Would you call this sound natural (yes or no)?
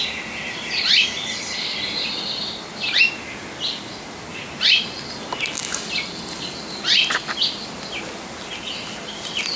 yes